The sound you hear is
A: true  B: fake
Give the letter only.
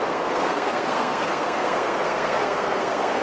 B